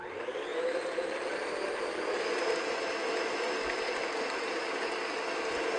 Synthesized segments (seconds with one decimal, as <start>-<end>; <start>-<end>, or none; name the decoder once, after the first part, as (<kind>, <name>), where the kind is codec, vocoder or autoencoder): none